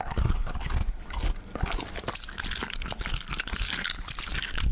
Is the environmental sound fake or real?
real